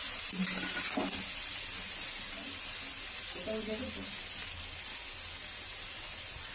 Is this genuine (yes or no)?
yes